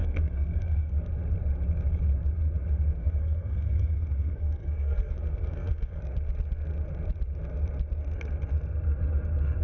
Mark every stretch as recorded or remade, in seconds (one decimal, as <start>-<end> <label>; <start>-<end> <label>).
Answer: 0.0-1.1 remade; 1.1-3.0 recorded; 3.0-6.0 remade; 6.0-9.6 recorded